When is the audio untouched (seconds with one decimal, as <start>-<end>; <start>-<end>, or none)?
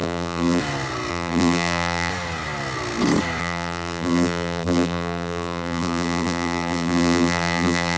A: 0.6-1.1; 2.1-3.4